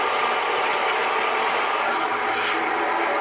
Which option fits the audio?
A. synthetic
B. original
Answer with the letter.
B